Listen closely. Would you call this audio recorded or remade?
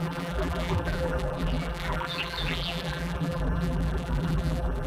remade